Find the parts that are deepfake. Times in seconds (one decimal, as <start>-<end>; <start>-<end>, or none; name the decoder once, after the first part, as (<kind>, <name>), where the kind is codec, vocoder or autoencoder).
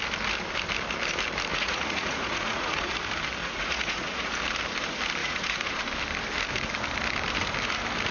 1.5-2.9 (vocoder, Vocos); 3.4-4.3; 5.2-5.8